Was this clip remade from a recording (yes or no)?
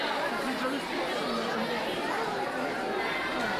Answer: no